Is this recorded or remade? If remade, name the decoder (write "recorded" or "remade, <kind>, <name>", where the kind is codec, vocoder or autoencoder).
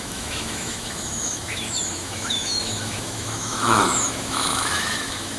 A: remade, autoencoder, DAC-VAE